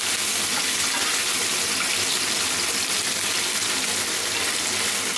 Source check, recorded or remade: recorded